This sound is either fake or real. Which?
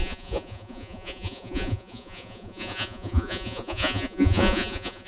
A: fake